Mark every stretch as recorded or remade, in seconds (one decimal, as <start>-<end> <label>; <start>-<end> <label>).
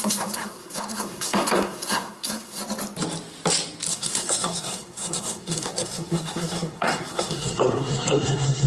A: 0.0-2.6 remade; 2.6-3.9 recorded; 3.9-8.7 remade